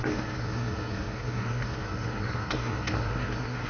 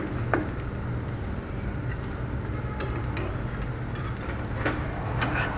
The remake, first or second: first